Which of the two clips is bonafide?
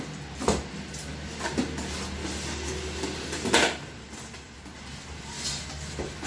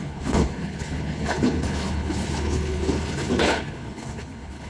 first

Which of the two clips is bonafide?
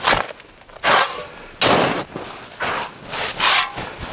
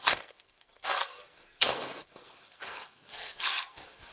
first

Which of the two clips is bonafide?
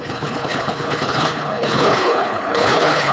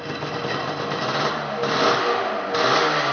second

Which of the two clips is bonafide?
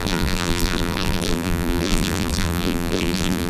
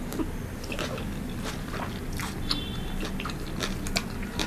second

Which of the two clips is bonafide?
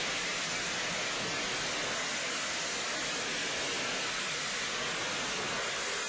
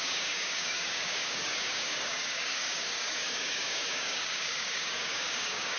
first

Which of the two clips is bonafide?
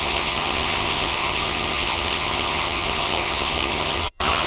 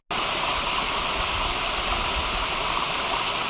second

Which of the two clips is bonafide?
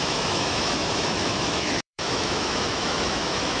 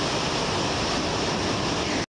second